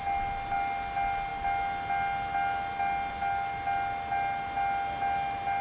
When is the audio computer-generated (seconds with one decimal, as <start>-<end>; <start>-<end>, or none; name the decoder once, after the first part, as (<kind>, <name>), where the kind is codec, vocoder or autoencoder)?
none